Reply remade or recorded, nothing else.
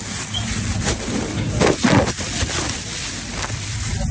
recorded